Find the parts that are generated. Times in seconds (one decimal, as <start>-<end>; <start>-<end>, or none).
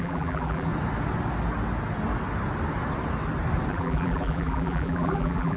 0.0-0.7; 3.7-5.6